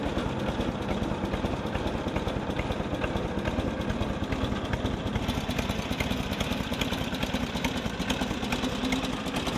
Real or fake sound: real